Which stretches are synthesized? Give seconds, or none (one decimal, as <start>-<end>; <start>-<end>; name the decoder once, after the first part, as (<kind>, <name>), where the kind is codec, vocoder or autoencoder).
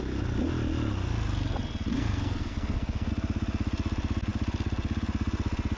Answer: 1.9-3.1 (codec, SNAC)